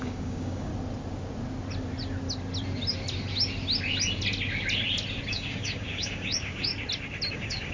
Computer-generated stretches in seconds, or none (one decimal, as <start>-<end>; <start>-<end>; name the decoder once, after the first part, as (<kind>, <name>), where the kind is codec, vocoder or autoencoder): 0.0-0.7 (codec, DAC); 5.3-6.7; 7.3-7.7